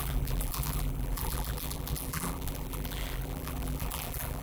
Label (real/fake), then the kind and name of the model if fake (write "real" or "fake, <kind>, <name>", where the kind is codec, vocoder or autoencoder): fake, vocoder, BigVGAN v2